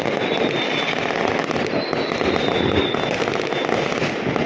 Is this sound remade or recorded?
recorded